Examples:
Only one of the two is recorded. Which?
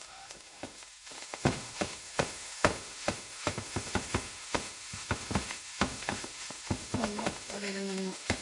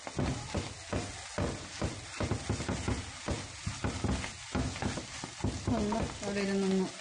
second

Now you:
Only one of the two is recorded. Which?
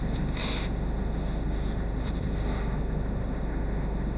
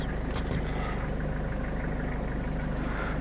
second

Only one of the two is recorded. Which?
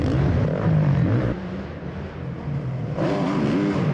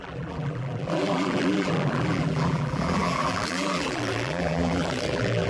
first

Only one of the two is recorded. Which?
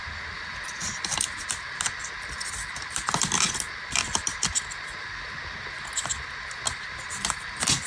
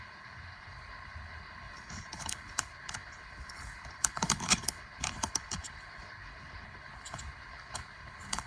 first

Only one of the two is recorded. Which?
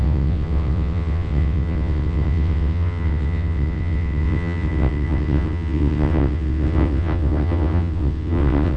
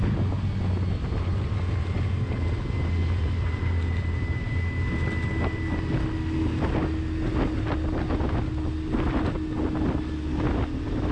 second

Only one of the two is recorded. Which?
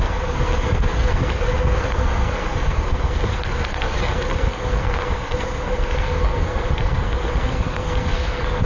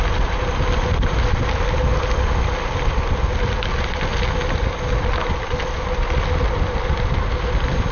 second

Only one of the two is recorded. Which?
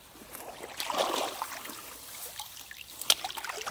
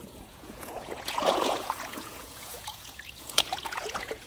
first